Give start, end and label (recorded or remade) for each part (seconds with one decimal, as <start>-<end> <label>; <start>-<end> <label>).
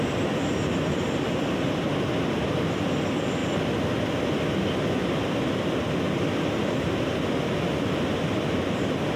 0.0-9.2 recorded